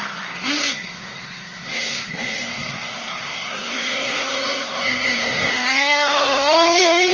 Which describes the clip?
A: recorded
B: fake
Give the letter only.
B